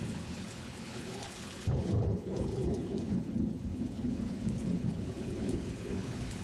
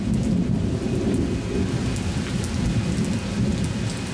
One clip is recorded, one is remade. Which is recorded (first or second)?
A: second